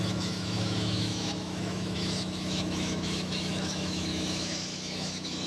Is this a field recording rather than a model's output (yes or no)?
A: no